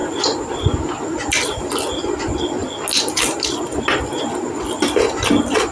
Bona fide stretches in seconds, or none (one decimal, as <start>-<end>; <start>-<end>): 0.0-5.7